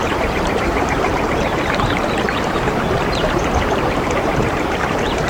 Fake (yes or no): yes